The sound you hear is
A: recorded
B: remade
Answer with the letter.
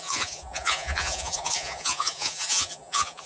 B